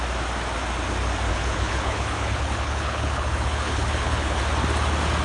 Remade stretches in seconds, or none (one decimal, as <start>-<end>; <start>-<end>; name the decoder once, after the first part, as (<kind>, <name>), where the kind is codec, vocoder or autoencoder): 1.3-4.4 (codec, HILCodec)